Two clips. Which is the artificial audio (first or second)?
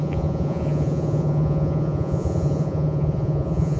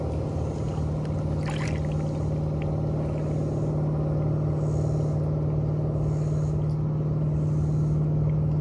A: first